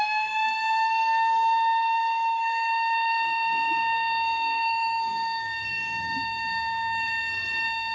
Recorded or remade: remade